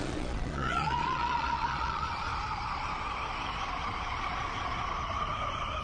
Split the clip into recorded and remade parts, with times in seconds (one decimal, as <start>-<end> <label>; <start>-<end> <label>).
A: 0.0-2.3 remade; 2.3-5.8 recorded